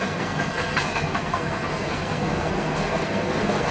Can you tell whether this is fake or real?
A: fake